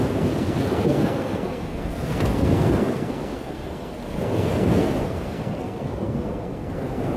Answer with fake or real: fake